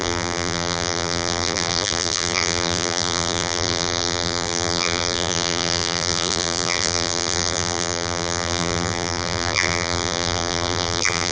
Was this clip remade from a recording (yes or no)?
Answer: yes